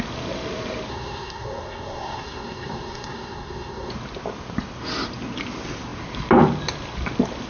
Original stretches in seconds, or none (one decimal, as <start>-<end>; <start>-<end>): 0.0-0.9; 3.9-7.5